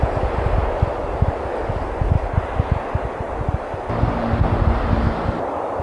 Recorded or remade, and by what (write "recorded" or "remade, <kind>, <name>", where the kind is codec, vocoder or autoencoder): recorded